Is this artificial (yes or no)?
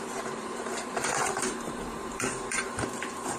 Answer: yes